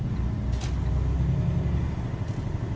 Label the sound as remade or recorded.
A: recorded